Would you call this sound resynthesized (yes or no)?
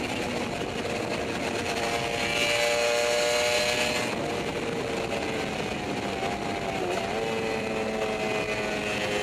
no